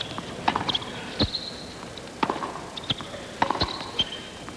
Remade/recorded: recorded